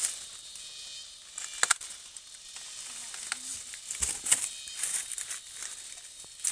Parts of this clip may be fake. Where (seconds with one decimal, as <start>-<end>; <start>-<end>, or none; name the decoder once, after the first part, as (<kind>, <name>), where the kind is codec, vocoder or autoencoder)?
none

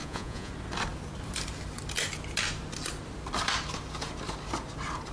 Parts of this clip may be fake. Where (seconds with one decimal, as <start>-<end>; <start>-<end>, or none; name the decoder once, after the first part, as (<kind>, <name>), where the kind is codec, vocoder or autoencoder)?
0.0-0.5 (vocoder, Vocos)